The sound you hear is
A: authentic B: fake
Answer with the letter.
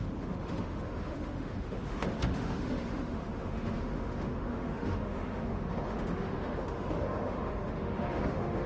B